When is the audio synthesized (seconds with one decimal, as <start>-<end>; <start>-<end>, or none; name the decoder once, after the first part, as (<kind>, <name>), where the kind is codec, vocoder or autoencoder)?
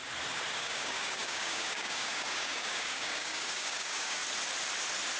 0.5-4.2 (codec, DAC)